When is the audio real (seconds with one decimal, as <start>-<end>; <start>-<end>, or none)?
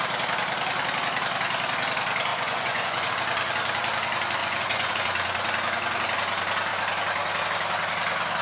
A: 0.0-2.3; 3.1-4.4; 4.9-8.4